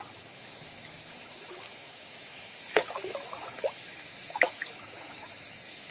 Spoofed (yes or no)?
yes